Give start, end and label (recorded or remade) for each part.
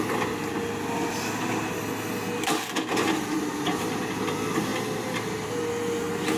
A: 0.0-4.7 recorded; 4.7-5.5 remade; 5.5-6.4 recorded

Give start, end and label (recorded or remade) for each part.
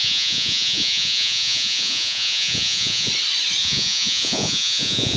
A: 0.0-3.1 remade; 3.1-3.6 recorded; 3.6-5.2 remade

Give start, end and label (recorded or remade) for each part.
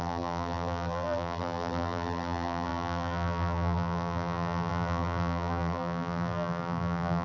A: 0.0-7.2 remade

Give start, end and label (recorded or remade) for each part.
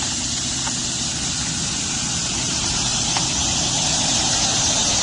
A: 0.0-5.0 recorded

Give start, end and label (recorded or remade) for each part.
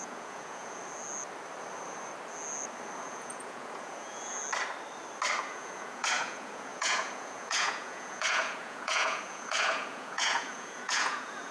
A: 0.0-0.8 remade; 0.8-3.0 recorded; 3.0-4.4 remade; 4.4-5.4 recorded; 5.4-11.5 remade